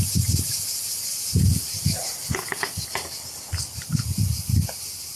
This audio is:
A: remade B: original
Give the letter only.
B